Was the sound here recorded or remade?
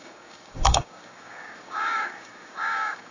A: remade